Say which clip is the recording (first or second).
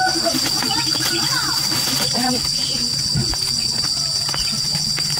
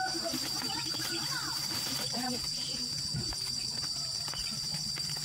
first